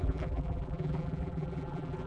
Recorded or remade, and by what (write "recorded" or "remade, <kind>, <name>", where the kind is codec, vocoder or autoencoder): remade, vocoder, BigVGAN v2